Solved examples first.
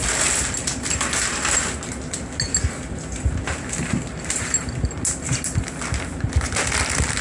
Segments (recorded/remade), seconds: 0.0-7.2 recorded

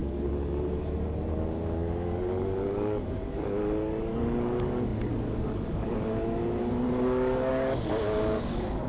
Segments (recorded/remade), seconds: 0.0-8.9 remade

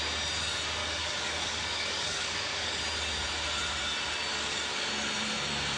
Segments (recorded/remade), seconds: 0.0-0.8 recorded; 0.8-2.8 remade; 2.8-4.3 recorded; 4.3-4.9 remade; 4.9-5.8 recorded

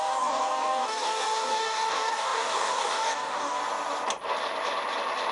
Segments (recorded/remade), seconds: 0.0-3.6 remade; 3.6-5.3 recorded

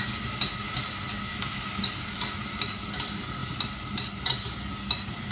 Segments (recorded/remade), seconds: 0.0-1.3 recorded; 1.3-2.2 remade; 2.2-5.3 recorded

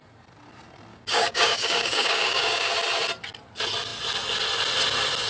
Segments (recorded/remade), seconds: 0.0-0.9 recorded; 0.9-2.7 remade; 2.7-5.3 recorded

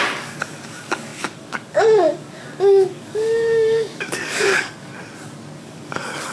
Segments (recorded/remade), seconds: 0.0-4.9 remade; 4.9-5.6 recorded; 5.6-6.3 remade